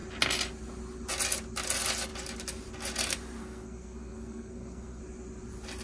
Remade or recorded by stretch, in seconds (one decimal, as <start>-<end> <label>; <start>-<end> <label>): 0.0-3.4 recorded; 3.4-5.0 remade; 5.0-5.8 recorded